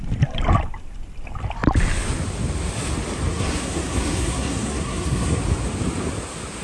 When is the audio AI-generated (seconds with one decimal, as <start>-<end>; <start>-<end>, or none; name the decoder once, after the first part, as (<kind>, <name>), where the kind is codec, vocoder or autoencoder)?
3.3-5.4 (codec, SNAC)